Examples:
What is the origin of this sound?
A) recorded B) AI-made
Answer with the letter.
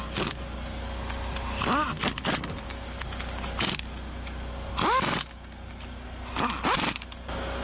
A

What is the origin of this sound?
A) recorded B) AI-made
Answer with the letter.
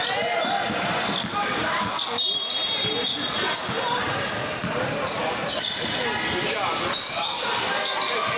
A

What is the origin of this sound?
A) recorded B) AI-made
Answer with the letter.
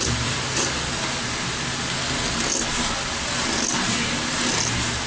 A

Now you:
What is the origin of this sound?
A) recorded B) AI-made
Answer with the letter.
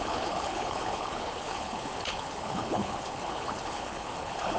B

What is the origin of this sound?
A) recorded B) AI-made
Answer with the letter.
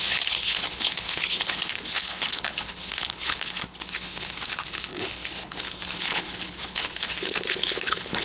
B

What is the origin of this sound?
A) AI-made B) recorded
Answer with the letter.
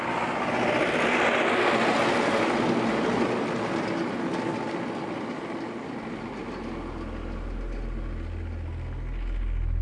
B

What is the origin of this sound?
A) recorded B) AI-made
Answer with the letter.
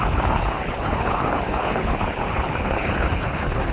B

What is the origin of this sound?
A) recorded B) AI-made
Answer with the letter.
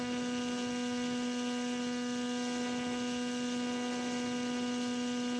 A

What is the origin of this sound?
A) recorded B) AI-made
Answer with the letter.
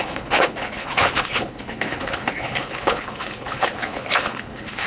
B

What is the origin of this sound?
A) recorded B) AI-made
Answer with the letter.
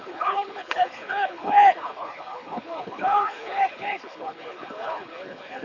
B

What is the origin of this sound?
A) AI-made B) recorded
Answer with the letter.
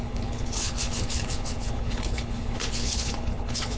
A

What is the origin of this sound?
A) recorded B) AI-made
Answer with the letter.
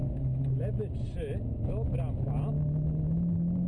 A